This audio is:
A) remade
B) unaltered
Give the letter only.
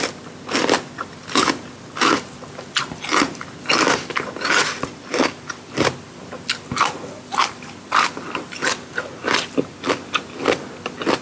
B